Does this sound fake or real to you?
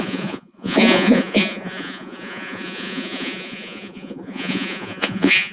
fake